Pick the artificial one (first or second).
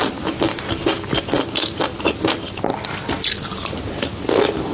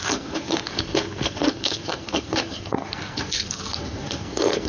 second